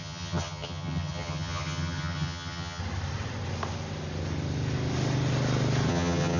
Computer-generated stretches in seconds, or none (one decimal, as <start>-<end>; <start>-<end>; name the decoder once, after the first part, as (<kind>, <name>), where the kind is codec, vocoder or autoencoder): 0.0-2.8 (vocoder, HiFi-GAN); 5.9-6.4